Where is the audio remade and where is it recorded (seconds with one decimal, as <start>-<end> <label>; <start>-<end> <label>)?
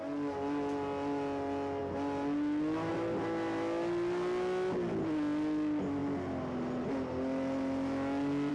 0.0-8.5 recorded